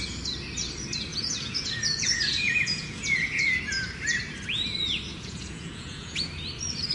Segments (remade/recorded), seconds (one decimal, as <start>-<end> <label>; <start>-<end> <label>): 0.0-1.1 recorded; 1.1-3.6 remade; 3.6-5.1 recorded; 5.1-6.3 remade; 6.3-6.9 recorded